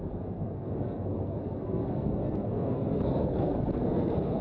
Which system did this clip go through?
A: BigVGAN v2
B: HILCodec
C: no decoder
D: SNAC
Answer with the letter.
D